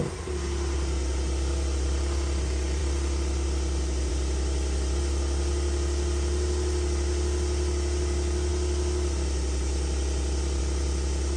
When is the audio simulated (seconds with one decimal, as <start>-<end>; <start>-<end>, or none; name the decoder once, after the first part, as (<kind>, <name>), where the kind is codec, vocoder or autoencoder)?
none